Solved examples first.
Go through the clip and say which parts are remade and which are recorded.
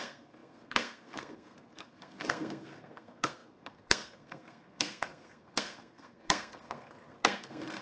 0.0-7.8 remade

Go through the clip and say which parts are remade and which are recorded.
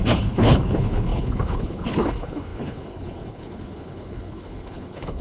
0.0-5.2 remade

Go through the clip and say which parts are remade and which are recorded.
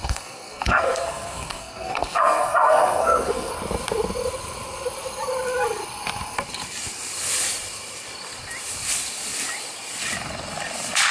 0.0-3.5 remade; 3.5-11.1 recorded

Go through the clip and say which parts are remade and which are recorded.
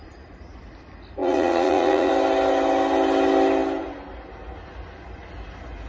0.0-1.2 recorded; 1.2-2.1 remade; 2.1-5.9 recorded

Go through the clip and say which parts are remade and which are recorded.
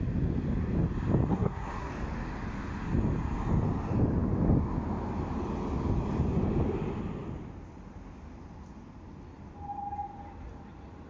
0.0-1.3 recorded; 1.3-1.9 remade; 1.9-11.1 recorded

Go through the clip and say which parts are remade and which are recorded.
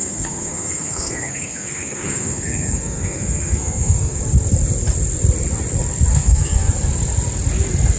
0.0-4.2 remade; 4.2-6.1 recorded; 6.1-6.7 remade; 6.7-8.0 recorded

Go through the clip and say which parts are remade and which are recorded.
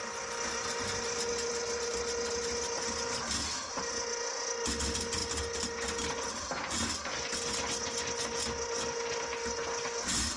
0.0-10.4 recorded